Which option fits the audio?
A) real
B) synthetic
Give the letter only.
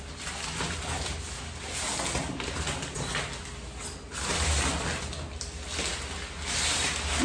A